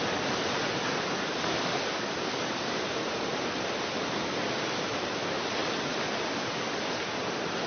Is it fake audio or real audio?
real